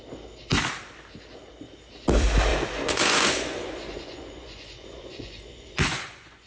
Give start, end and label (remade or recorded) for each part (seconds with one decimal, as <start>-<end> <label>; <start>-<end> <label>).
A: 0.0-2.5 recorded; 2.5-6.5 remade